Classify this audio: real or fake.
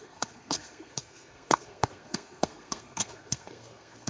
fake